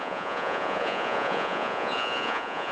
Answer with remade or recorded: remade